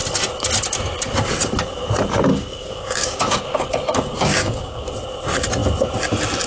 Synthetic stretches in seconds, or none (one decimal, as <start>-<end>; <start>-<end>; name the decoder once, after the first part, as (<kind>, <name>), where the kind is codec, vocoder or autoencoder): 2.3-4.9 (codec, DAC)